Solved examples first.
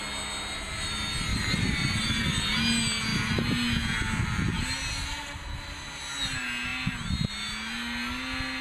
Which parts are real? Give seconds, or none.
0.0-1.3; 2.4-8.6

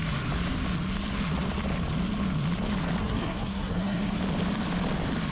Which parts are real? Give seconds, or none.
0.0-3.0; 4.2-5.3

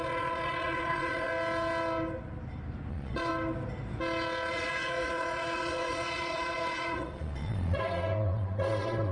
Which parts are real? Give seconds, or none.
1.3-2.9; 3.3-4.5

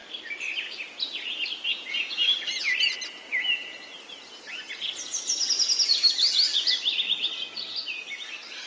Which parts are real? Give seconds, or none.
0.0-6.5; 7.0-8.7